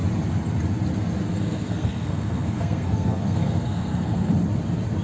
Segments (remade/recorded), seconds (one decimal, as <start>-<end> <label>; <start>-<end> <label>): 0.0-1.3 recorded; 1.3-4.3 remade; 4.3-5.0 recorded